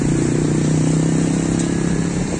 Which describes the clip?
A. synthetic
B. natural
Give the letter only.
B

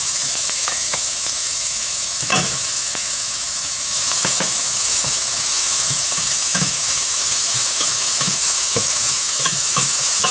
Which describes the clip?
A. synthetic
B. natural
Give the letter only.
A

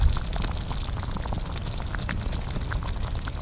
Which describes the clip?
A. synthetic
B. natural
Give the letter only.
B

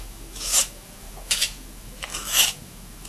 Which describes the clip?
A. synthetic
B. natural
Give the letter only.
A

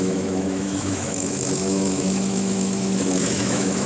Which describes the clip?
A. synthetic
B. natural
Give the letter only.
A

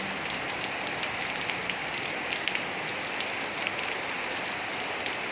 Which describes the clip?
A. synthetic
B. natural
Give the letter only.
B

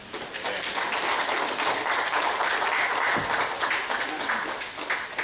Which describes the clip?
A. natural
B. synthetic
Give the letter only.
A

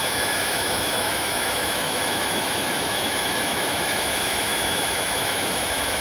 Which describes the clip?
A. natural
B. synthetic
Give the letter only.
B